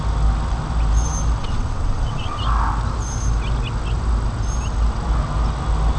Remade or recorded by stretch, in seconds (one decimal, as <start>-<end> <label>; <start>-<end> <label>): 0.0-1.4 recorded; 1.4-2.4 remade; 2.4-6.0 recorded